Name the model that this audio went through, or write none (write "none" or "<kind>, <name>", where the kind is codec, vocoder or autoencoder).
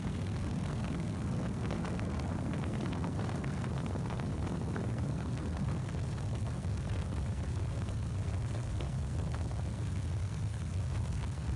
codec, SNAC